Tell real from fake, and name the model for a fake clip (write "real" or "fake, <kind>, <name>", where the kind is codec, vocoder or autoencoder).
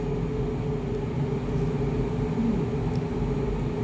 real